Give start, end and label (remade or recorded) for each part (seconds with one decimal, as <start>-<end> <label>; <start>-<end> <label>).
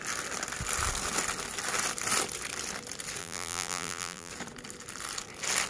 0.0-3.2 recorded; 3.2-4.3 remade; 4.3-5.7 recorded